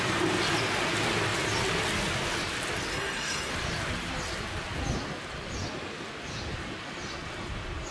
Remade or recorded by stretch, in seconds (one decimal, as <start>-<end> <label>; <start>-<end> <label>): 0.0-2.9 recorded; 2.9-3.5 remade; 3.5-7.9 recorded